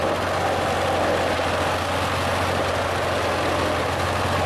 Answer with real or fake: real